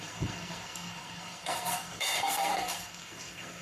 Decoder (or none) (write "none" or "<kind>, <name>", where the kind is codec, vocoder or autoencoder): codec, SNAC